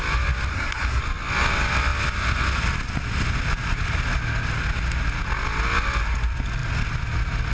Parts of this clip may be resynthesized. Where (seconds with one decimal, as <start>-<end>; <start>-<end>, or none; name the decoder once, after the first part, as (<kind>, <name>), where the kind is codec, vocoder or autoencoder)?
0.5-1.0 (codec, SNAC)